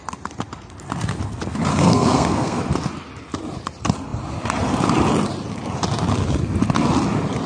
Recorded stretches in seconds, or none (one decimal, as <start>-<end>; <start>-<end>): 0.0-1.7; 2.6-7.5